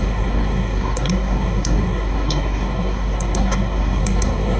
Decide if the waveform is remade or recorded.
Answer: remade